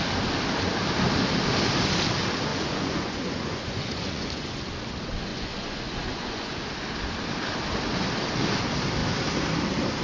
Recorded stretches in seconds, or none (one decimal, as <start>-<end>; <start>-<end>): 0.0-2.5; 4.6-5.3; 6.6-10.0